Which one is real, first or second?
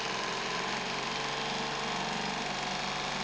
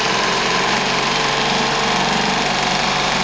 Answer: first